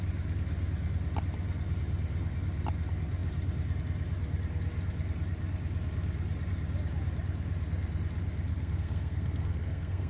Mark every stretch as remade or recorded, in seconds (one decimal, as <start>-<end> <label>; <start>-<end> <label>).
0.0-8.5 recorded; 8.5-10.1 remade